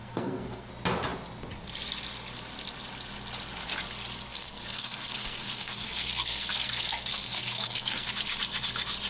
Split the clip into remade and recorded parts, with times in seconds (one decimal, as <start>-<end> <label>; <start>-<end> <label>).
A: 0.0-0.7 remade; 0.7-4.3 recorded; 4.3-8.1 remade; 8.1-9.1 recorded